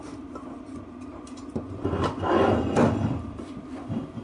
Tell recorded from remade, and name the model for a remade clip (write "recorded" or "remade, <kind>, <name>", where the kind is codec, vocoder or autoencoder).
remade, vocoder, BigVGAN v2